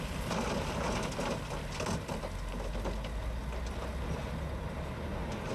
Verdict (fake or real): real